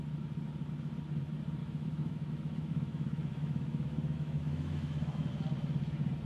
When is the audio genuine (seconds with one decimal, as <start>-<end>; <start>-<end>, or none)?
0.0-1.6; 5.3-6.3

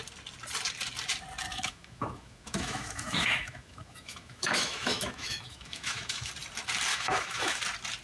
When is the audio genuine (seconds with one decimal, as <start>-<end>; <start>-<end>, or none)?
0.0-1.5; 6.3-6.9; 7.6-8.0

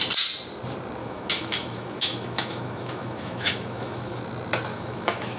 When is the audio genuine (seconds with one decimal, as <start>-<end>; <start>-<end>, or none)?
0.0-1.0; 4.2-4.7

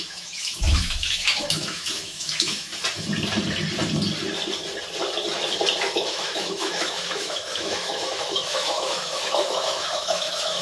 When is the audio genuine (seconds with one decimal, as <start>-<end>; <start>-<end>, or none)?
2.7-5.8